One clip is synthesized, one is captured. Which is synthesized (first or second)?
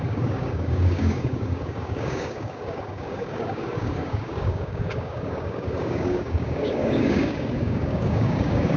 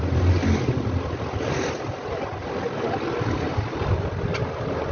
first